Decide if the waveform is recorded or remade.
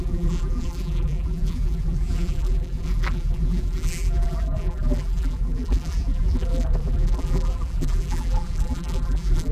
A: remade